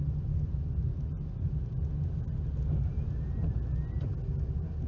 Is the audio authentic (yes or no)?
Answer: yes